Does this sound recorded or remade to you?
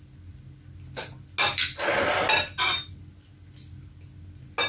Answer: recorded